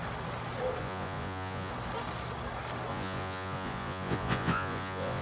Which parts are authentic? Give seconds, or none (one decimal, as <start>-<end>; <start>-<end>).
0.0-0.8; 1.7-2.9